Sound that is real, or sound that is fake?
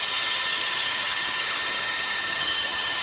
fake